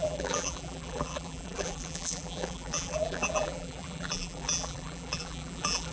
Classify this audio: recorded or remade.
remade